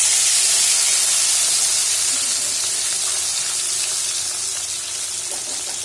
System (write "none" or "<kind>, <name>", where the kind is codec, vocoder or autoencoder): none